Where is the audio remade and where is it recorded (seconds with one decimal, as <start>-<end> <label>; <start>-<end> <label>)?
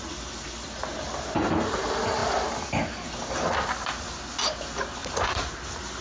0.0-5.0 recorded; 5.0-5.5 remade; 5.5-6.0 recorded